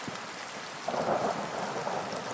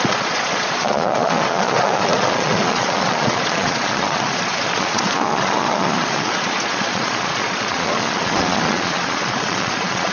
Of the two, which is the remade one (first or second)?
second